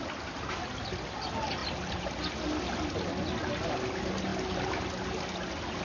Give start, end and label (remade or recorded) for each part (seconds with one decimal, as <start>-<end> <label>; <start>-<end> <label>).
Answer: 0.0-5.8 recorded